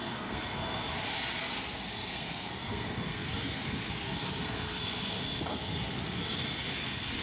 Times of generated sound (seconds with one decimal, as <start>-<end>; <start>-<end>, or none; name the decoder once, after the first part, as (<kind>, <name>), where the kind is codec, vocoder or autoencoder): 0.0-0.8 (codec, SNAC); 1.4-7.2